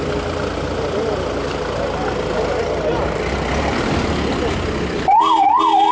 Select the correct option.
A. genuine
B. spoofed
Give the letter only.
A